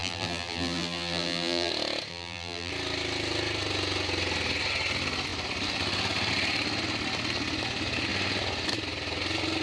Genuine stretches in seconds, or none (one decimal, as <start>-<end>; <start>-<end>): 1.7-2.1; 2.7-9.6